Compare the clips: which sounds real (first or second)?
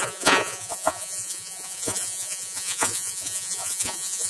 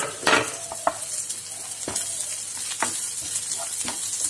second